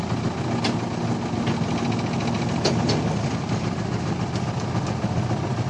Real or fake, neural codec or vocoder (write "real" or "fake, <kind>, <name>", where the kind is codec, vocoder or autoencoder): real